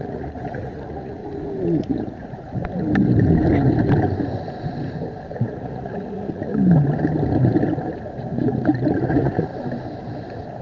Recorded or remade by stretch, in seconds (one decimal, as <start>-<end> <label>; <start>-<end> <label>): 0.0-1.2 remade; 1.2-1.8 recorded; 1.8-2.6 remade; 2.6-5.4 recorded; 5.4-6.5 remade; 6.5-9.1 recorded; 9.1-9.5 remade; 9.5-10.6 recorded